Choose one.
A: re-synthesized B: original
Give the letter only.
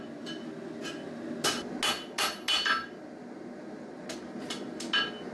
B